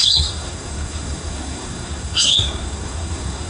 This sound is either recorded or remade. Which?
remade